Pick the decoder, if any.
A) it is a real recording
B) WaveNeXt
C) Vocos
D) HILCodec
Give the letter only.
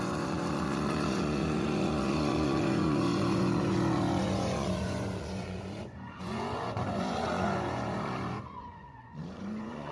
C